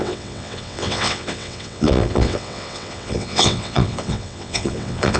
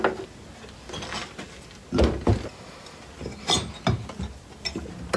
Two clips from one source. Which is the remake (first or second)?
first